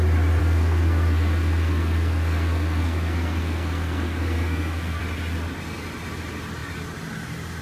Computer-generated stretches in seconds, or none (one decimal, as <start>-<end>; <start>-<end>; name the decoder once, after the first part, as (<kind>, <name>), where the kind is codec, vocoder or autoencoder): 0.4-5.0 (codec, SNAC)